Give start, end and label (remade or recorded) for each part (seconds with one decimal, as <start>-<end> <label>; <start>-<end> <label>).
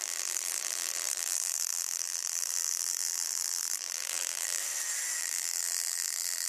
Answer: 0.0-4.6 remade; 4.6-5.2 recorded; 5.2-6.5 remade